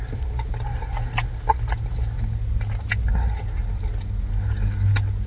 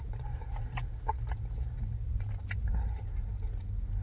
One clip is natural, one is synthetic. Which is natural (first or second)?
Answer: first